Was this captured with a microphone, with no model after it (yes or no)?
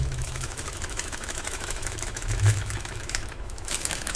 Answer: no